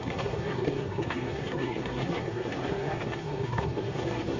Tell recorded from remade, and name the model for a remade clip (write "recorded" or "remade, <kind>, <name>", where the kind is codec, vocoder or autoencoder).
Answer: remade, codec, SNAC